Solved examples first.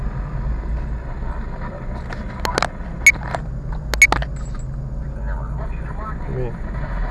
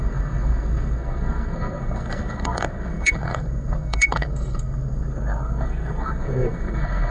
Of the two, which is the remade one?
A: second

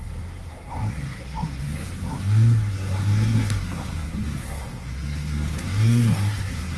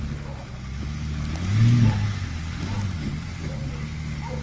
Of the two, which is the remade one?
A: first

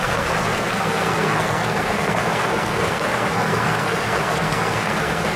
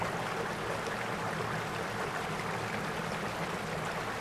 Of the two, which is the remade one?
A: first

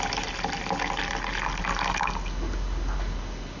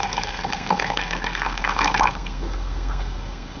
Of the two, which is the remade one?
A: second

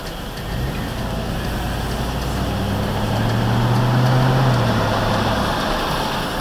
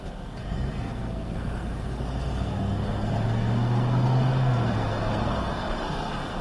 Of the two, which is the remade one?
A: second